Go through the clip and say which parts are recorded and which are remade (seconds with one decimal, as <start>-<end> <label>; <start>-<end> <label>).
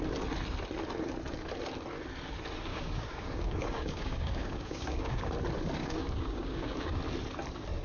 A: 0.0-2.7 recorded; 2.7-5.3 remade; 5.3-5.8 recorded; 5.8-7.0 remade; 7.0-7.8 recorded